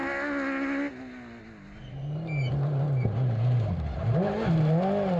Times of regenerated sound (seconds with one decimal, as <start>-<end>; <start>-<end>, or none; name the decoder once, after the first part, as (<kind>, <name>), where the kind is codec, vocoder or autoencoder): none